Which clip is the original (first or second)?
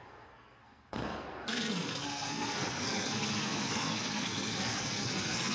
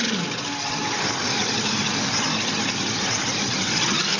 second